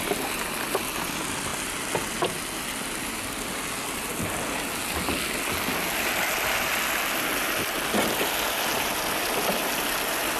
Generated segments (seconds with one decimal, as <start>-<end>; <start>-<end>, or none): none